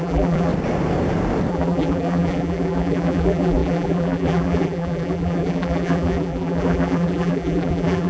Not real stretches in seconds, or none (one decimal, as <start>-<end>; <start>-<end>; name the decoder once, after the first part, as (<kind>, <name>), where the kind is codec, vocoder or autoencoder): 0.0-0.5 (vocoder, BigVGAN v2); 1.5-8.1